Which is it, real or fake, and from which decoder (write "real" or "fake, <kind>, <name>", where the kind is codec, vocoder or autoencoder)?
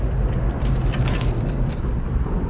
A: fake, vocoder, BigVGAN v2